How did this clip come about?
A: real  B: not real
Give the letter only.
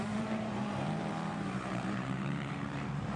B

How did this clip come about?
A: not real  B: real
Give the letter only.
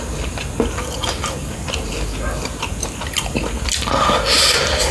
B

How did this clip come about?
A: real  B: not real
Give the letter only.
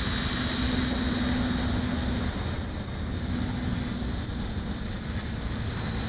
A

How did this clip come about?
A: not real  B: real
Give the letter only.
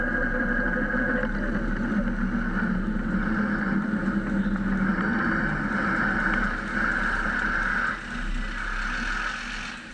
B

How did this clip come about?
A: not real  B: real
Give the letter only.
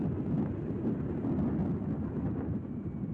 B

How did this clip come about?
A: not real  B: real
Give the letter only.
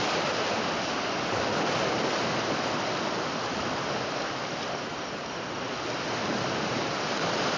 B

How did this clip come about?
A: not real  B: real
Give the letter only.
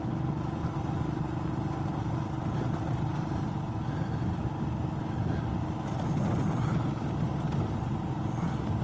B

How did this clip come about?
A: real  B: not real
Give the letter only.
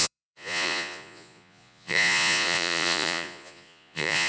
B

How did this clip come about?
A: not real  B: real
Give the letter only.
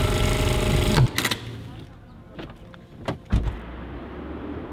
B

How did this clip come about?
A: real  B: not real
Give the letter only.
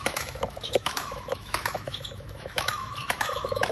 B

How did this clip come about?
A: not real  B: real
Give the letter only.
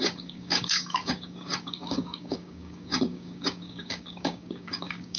A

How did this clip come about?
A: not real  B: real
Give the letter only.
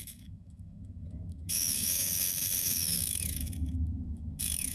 A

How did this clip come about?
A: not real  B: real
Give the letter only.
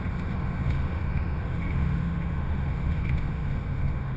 A